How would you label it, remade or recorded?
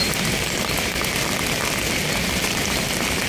recorded